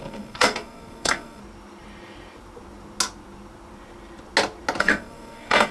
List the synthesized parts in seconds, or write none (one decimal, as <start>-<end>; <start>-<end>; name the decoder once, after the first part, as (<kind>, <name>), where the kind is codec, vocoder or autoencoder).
0.0-1.4 (codec, SNAC); 4.8-5.7